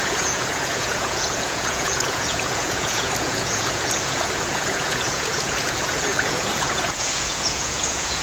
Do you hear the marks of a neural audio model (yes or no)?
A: yes